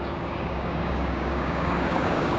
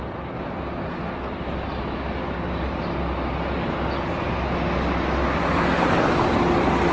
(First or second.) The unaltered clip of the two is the second